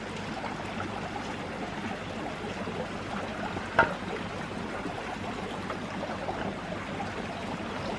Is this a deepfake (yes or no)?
no